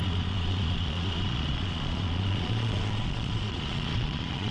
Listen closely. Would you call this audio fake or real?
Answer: fake